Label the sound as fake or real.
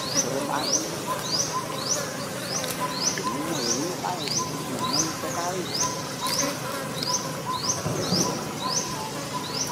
real